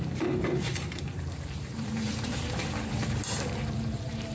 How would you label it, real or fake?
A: fake